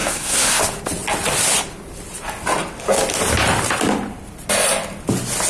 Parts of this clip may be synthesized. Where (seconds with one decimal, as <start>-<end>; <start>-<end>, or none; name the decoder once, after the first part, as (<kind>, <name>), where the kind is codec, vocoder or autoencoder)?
0.0-0.6 (codec, SNAC)